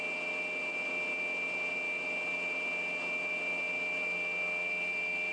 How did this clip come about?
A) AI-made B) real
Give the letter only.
B